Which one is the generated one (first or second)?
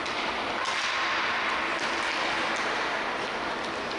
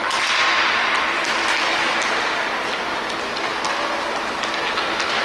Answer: first